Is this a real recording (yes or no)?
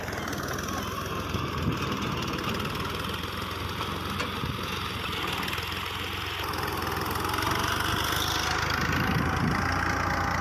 yes